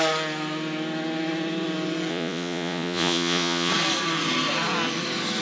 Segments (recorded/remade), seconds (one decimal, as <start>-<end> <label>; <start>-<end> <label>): 0.0-2.1 recorded; 2.1-3.7 remade; 3.7-5.4 recorded